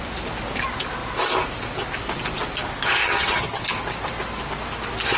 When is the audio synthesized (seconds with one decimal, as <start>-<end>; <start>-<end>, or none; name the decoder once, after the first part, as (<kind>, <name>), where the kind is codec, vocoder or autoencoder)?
3.0-3.6 (vocoder, HiFi-GAN)